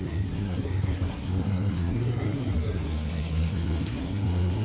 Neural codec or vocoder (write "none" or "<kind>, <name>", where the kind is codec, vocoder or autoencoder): codec, SNAC